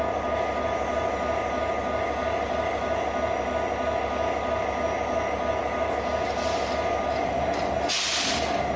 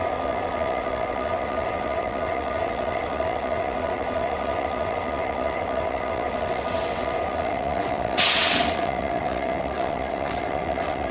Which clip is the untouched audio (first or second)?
first